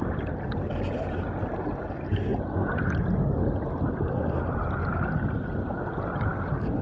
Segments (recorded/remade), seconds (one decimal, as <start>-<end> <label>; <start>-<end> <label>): 0.0-4.8 recorded; 4.8-6.8 remade